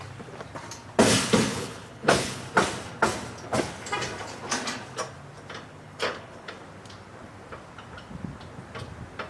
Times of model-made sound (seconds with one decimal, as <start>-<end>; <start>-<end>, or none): 1.5-2.4; 5.7-6.5